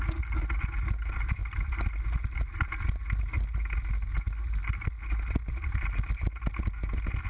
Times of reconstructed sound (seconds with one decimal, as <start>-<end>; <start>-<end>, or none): none